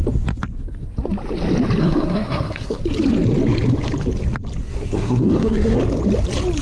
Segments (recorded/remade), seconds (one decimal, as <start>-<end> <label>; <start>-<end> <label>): 0.0-1.8 recorded; 1.8-2.8 remade; 2.8-4.6 recorded; 4.6-5.8 remade; 5.8-6.6 recorded